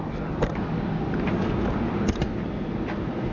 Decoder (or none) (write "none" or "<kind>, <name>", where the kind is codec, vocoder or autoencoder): none